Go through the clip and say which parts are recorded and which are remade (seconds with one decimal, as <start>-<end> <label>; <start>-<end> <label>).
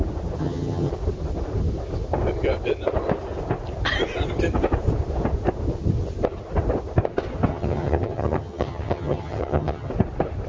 0.0-0.4 recorded; 0.4-0.9 remade; 0.9-7.5 recorded; 7.5-9.9 remade; 9.9-10.5 recorded